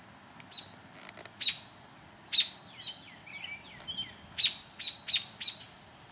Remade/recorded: recorded